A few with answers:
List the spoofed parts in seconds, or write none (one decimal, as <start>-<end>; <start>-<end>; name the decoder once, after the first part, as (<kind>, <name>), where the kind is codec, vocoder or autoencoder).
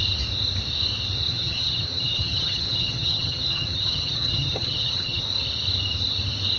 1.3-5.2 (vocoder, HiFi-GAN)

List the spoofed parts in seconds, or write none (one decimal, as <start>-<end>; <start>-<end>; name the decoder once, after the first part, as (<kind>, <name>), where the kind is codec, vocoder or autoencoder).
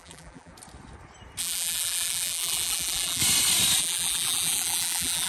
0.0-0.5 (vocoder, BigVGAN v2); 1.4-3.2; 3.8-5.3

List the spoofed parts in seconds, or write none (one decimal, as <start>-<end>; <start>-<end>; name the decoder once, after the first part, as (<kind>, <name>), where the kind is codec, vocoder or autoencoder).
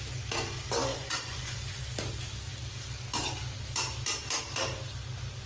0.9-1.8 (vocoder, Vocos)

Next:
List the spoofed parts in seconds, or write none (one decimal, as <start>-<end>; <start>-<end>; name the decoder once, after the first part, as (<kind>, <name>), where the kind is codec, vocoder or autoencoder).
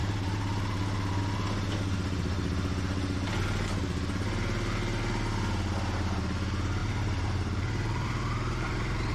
0.0-1.2 (vocoder, BigVGAN v2); 6.8-9.1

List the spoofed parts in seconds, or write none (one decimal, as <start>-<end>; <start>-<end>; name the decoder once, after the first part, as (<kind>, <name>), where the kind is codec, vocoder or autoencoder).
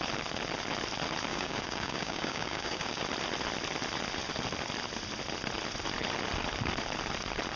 1.3-3.0 (codec, DAC)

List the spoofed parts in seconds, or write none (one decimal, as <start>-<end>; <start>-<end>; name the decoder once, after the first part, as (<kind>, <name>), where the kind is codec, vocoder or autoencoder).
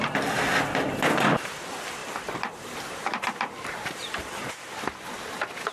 2.0-4.5 (vocoder, BigVGAN v2)